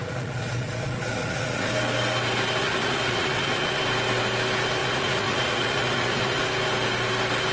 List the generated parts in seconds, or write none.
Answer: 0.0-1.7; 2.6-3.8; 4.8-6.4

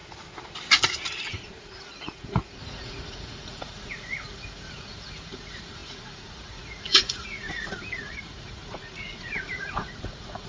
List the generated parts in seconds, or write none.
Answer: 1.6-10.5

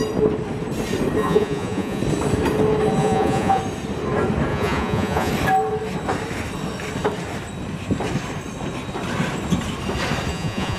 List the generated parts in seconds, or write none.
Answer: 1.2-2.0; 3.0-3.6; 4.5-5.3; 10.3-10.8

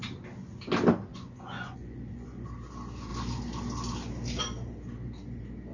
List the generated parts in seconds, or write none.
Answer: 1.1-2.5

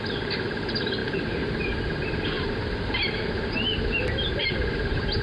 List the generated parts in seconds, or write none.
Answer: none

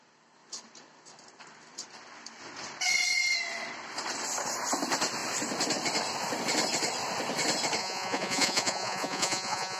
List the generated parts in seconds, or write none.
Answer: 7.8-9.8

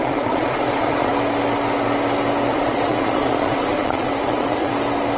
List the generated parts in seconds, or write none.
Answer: 0.0-1.1; 2.5-4.7